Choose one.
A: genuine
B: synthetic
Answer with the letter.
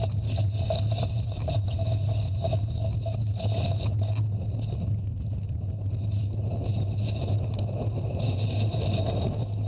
A